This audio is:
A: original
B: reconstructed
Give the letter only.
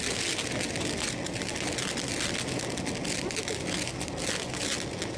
A